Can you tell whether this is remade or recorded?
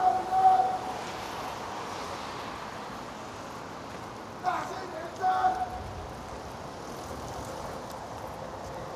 recorded